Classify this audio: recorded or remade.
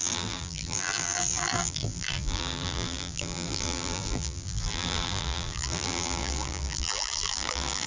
remade